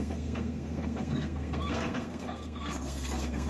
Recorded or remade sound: remade